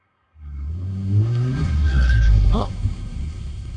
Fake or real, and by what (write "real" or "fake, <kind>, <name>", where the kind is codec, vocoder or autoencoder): fake, codec, SNAC